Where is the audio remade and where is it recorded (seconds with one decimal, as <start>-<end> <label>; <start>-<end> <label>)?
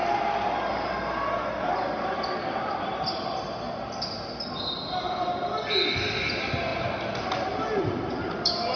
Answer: 0.0-8.8 recorded